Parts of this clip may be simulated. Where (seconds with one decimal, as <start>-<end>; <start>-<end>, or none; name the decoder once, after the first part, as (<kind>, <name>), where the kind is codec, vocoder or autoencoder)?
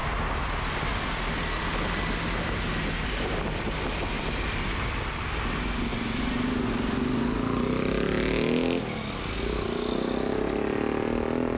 none